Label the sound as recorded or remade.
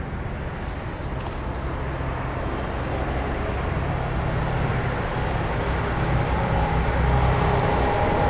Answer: recorded